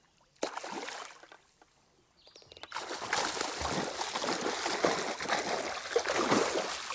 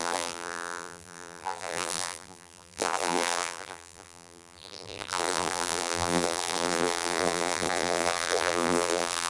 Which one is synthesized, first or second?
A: second